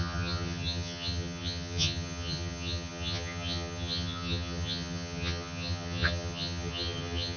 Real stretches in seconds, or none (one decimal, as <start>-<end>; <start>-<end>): none